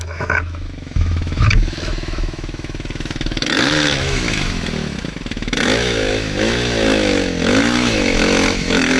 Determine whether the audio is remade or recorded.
remade